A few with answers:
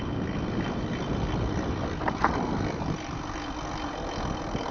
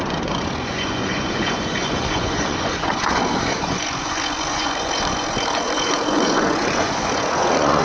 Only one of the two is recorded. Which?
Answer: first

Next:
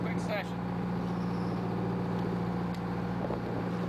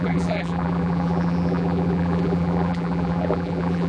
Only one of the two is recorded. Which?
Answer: first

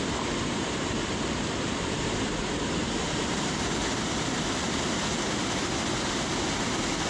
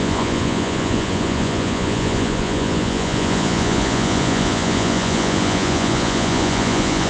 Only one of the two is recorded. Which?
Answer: first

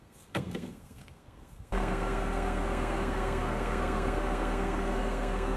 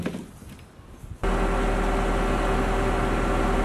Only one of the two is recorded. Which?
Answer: second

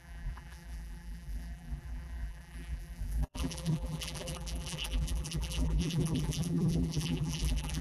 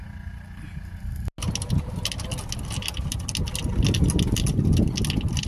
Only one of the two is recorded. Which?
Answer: second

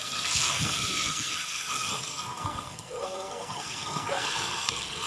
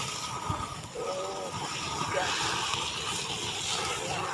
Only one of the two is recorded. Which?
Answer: second